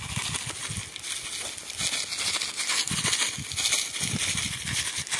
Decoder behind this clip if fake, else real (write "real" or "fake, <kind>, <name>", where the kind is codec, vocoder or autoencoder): real